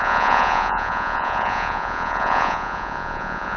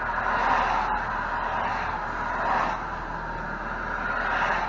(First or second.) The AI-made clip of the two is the first